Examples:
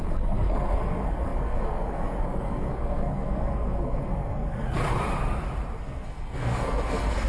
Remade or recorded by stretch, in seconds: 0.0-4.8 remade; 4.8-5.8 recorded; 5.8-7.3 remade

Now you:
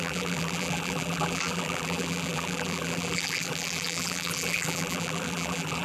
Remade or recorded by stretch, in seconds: 0.0-5.8 remade

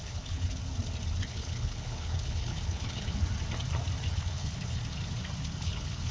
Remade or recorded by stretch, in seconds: 0.0-0.6 remade; 0.6-1.3 recorded; 1.3-3.2 remade; 3.2-4.1 recorded; 4.1-4.8 remade; 4.8-5.6 recorded; 5.6-6.1 remade

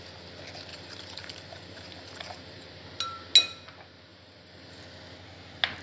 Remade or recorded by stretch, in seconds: 0.0-0.7 recorded; 0.7-2.7 remade; 2.7-4.1 recorded; 4.1-4.8 remade; 4.8-5.8 recorded

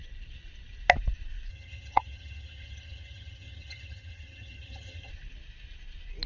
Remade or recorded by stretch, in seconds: 0.0-1.5 recorded; 1.5-5.1 remade; 5.1-6.3 recorded

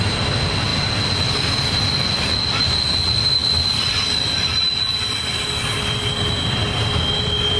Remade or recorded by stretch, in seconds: 0.0-7.6 recorded